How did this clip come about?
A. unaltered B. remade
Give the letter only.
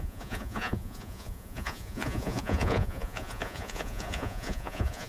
B